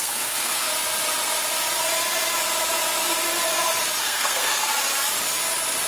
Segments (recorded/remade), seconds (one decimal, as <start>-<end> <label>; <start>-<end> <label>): 0.0-0.7 remade; 0.7-4.0 recorded; 4.0-4.7 remade; 4.7-5.9 recorded